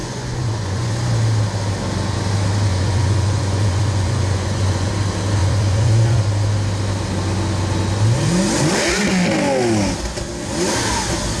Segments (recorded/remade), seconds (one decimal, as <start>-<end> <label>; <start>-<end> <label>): 0.0-0.9 remade; 0.9-2.7 recorded; 2.7-4.9 remade; 4.9-5.4 recorded; 5.4-6.2 remade; 6.2-11.4 recorded

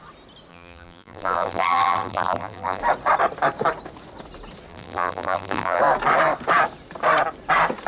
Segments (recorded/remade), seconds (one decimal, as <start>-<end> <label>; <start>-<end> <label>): 0.0-0.5 recorded; 0.5-2.8 remade; 2.8-4.7 recorded; 4.7-5.8 remade; 5.8-7.9 recorded

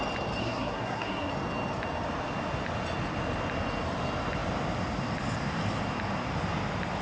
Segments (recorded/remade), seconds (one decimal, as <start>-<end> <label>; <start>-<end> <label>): 0.0-0.4 recorded; 0.4-1.3 remade; 1.3-7.0 recorded

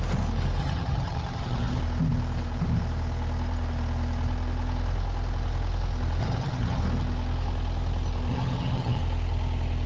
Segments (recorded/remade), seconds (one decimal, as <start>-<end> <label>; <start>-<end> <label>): 0.0-0.6 recorded; 0.6-1.8 remade; 1.8-6.2 recorded; 6.2-6.8 remade; 6.8-8.3 recorded; 8.3-9.0 remade; 9.0-9.9 recorded

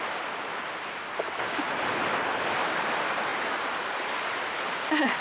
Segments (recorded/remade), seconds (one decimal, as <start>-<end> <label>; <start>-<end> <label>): 0.0-5.2 recorded

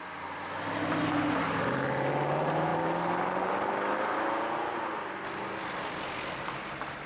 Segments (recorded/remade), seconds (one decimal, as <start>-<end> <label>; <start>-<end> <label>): 0.0-7.1 recorded

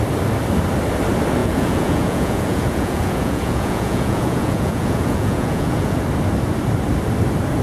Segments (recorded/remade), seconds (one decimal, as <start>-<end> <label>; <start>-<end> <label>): 0.0-1.4 recorded; 1.4-6.0 remade; 6.0-7.6 recorded

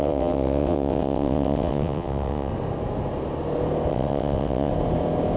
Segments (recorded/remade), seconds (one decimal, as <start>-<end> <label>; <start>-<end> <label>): 0.0-2.5 remade; 2.5-3.9 recorded; 3.9-4.7 remade; 4.7-5.4 recorded